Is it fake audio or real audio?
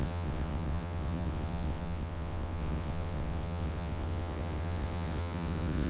fake